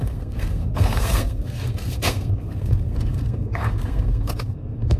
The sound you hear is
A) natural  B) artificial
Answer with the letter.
B